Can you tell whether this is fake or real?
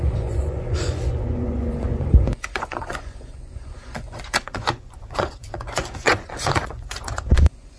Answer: fake